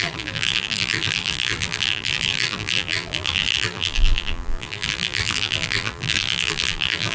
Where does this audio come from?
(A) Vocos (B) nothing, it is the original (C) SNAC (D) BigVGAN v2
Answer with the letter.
D